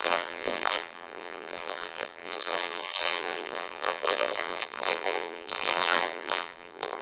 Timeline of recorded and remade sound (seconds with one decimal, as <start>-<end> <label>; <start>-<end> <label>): 0.0-7.0 remade